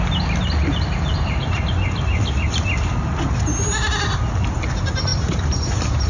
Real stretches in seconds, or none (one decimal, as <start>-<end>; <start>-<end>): 0.0-0.6; 1.6-5.1